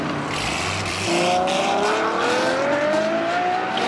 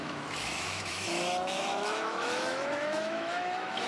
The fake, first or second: second